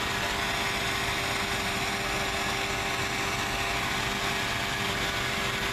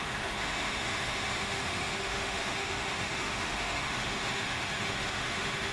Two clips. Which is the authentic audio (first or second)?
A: first